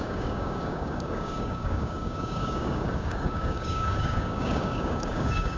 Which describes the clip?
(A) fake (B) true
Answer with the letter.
A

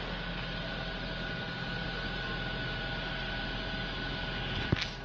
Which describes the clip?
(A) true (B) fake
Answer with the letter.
A